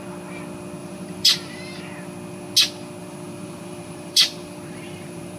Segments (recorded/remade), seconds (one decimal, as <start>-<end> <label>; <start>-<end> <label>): 0.0-0.8 recorded; 0.8-1.8 remade; 1.8-3.0 recorded; 3.0-5.4 remade